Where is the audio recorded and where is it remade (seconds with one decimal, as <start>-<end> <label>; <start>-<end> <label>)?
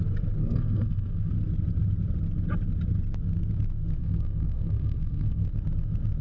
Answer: 0.0-0.4 recorded; 0.4-1.3 remade; 1.3-4.0 recorded; 4.0-5.5 remade; 5.5-6.2 recorded